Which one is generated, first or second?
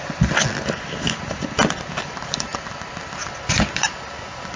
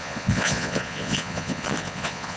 second